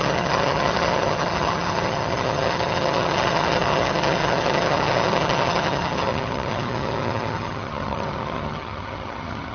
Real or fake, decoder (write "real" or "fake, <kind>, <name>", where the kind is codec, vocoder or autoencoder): fake, vocoder, HiFi-GAN